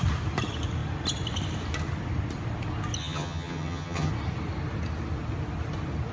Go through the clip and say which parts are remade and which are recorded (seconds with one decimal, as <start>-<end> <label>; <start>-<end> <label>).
0.0-3.0 recorded; 3.0-4.1 remade; 4.1-6.1 recorded